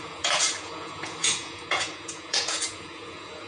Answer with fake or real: fake